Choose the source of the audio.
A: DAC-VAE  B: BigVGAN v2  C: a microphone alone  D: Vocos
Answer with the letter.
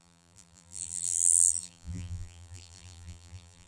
B